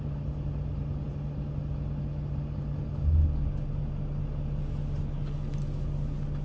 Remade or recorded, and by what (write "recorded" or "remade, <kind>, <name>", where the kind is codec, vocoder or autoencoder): recorded